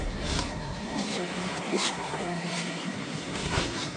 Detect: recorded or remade remade